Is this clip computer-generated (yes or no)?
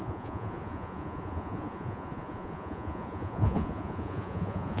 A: yes